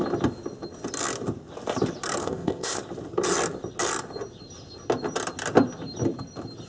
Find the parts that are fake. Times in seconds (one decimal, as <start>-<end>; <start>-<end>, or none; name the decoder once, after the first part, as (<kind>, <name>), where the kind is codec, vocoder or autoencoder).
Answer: 2.2-2.8 (codec, ZipCodec)